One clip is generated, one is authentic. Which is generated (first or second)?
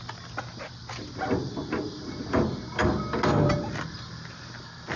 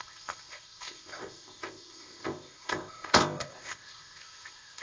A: second